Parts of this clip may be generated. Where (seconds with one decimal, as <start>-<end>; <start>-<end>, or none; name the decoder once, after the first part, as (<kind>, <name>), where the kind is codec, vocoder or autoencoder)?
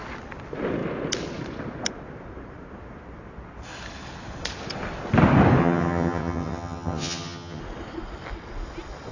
5.6-7.6 (vocoder, HiFi-GAN)